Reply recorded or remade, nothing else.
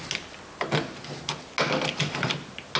recorded